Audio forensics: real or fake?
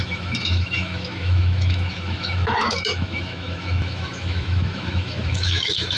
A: fake